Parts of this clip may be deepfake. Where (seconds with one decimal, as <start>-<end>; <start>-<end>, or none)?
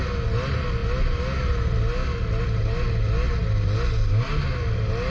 none